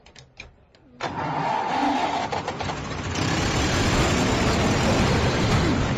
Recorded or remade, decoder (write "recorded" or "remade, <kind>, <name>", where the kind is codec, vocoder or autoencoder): remade, vocoder, BigVGAN v2